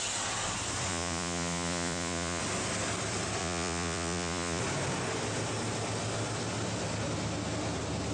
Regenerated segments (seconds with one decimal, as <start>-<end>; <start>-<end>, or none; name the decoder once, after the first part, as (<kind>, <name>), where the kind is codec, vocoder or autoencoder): 0.9-2.4 (vocoder, Vocos); 3.4-4.6